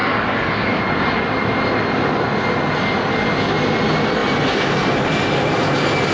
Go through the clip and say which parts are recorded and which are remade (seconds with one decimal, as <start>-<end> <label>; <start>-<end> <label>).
0.0-0.8 remade; 0.8-6.1 recorded